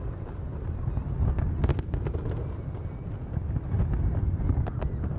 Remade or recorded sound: recorded